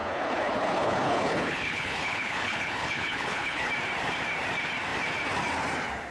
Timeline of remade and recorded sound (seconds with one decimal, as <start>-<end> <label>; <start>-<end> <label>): 0.0-3.7 remade; 3.7-6.1 recorded